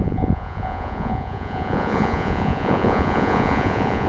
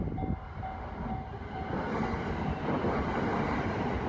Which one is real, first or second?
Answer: second